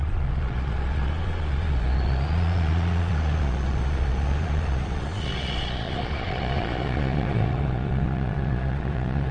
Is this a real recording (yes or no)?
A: no